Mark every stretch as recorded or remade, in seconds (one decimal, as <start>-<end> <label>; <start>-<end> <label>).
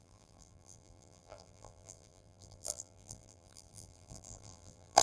0.0-5.0 remade